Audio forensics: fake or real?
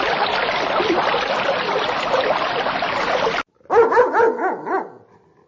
real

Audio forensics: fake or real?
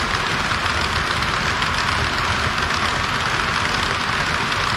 real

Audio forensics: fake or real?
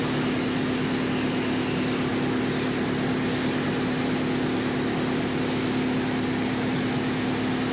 real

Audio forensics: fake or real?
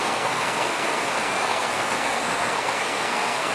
fake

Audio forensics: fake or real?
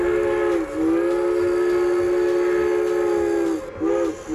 real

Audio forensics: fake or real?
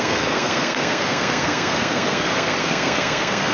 fake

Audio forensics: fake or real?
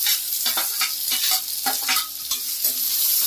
real